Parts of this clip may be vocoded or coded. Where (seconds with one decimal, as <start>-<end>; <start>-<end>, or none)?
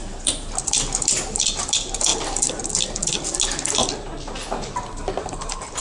none